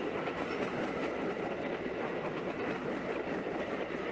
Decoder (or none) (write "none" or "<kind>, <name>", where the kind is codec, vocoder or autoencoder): none